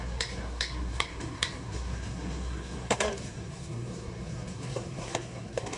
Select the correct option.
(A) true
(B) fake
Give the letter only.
B